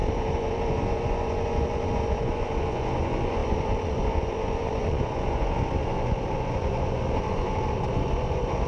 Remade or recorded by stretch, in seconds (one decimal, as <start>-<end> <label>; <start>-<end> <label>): 0.0-8.7 remade